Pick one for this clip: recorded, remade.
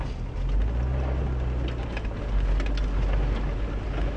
recorded